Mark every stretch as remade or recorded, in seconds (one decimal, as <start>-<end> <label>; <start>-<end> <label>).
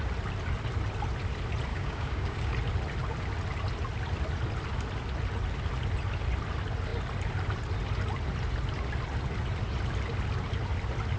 0.0-1.7 recorded; 1.7-2.5 remade; 2.5-11.2 recorded